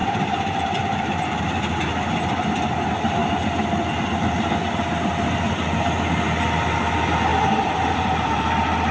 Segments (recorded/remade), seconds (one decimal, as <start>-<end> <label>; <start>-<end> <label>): 0.0-1.4 remade; 1.4-7.3 recorded; 7.3-8.5 remade; 8.5-8.9 recorded